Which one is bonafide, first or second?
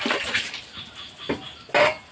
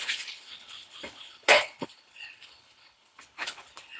first